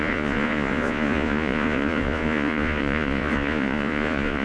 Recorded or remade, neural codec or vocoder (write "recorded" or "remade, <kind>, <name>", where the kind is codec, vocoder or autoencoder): remade, vocoder, Vocos